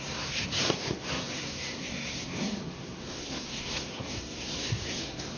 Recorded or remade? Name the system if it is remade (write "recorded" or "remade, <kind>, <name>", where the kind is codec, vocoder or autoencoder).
remade, codec, SNAC